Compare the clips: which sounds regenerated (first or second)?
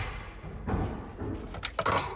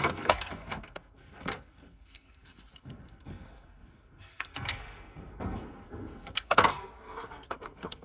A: second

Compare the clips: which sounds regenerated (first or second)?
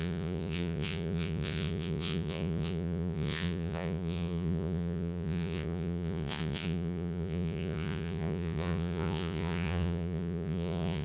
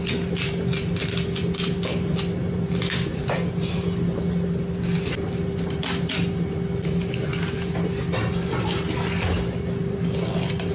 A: first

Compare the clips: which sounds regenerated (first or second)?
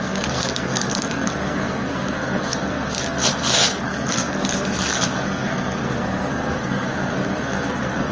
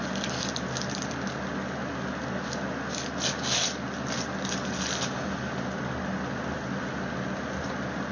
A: first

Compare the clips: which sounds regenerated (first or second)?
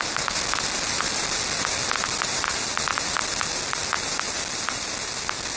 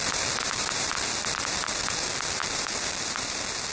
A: second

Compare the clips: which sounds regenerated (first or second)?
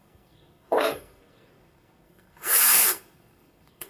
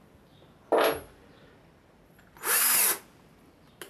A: first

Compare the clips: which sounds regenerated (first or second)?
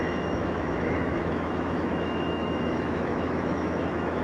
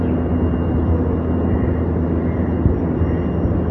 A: first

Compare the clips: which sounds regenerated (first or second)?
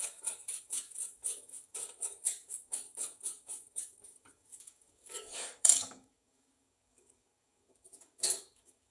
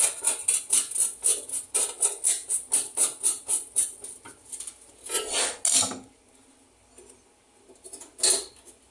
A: first